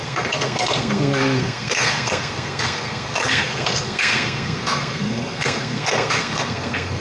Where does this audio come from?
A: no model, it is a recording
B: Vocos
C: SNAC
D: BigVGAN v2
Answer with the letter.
C